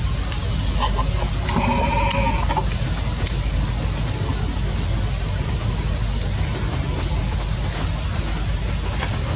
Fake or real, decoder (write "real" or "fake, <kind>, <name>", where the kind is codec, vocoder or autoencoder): real